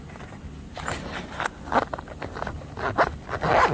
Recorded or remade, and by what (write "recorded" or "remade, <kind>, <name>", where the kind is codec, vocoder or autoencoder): recorded